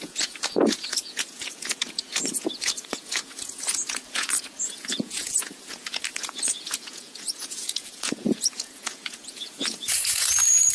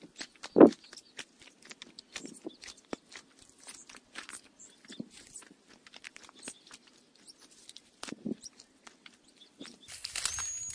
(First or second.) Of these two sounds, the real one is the second